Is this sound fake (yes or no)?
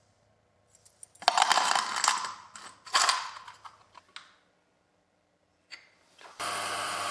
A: no